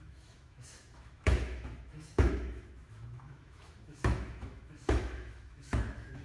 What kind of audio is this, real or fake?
fake